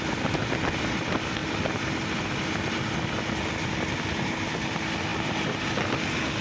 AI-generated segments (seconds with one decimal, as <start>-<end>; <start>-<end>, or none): 1.4-3.1